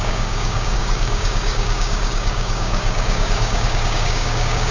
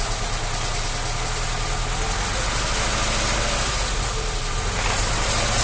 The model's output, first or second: first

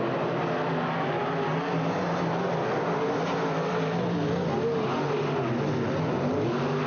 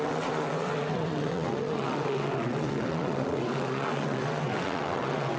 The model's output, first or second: second